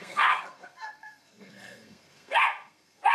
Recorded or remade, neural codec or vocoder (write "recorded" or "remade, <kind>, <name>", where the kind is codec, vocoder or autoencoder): remade, codec, SNAC